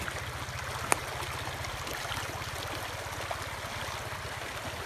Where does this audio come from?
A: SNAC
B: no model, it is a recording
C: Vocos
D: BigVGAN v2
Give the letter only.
B